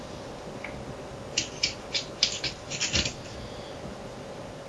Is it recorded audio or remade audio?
recorded